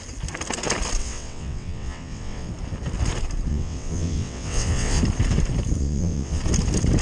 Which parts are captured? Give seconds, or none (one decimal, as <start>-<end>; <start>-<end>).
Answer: 0.0-1.0; 2.5-3.5; 5.0-5.8; 6.4-7.0